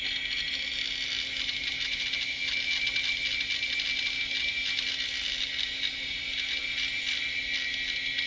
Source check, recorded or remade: recorded